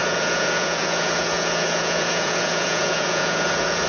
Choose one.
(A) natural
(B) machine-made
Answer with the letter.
B